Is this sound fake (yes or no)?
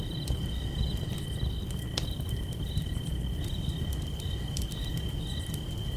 no